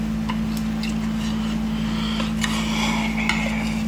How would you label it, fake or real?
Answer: real